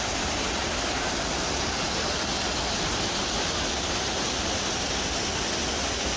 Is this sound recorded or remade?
recorded